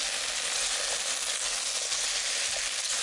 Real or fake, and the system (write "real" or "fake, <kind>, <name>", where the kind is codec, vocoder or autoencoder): real